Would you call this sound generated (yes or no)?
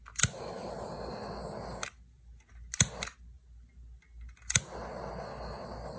no